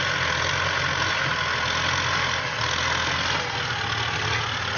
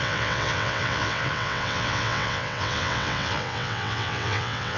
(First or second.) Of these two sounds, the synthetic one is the second